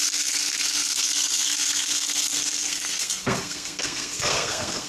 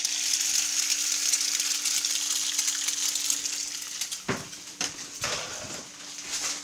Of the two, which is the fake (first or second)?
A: first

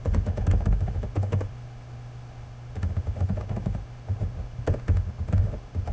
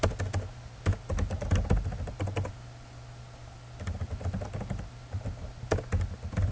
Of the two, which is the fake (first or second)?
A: first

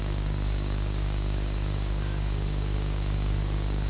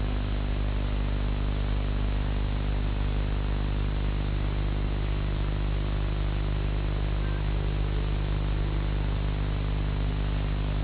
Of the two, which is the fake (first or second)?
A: first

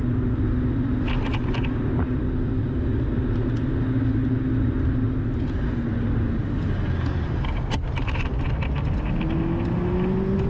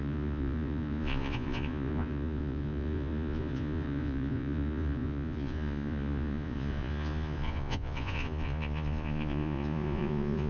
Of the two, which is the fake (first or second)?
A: second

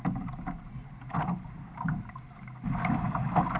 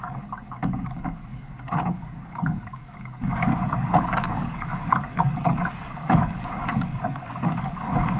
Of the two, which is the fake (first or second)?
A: second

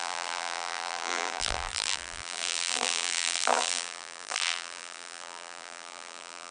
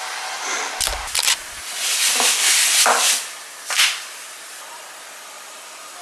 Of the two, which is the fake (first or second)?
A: first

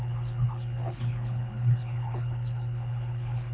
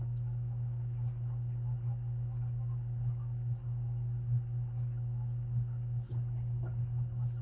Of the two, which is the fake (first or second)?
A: first